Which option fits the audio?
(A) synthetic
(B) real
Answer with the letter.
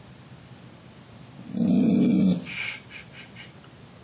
A